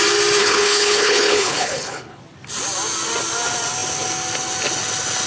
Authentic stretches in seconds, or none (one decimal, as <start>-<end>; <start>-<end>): 0.0-0.4; 2.2-5.3